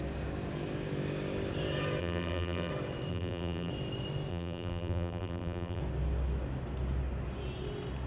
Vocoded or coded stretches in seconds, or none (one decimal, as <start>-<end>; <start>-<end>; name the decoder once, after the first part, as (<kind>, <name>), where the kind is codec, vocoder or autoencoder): 2.0-2.7 (vocoder, BigVGAN v2); 3.1-3.7; 4.3-5.8